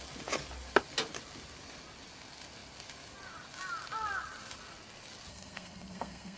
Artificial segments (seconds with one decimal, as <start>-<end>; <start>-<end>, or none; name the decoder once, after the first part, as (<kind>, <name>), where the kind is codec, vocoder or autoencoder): 5.3-6.4 (codec, SNAC)